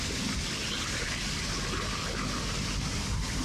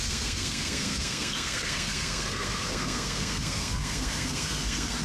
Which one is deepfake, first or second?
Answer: second